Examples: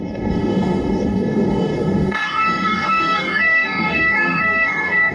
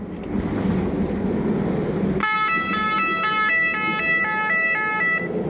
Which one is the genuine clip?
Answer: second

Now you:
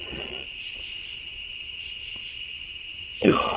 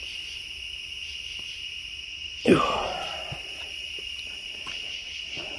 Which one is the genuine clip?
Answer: second